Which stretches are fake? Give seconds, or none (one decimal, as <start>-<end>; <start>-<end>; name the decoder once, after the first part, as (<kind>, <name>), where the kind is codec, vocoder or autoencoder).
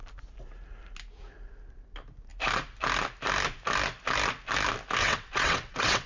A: 5.0-6.1 (vocoder, WaveNeXt)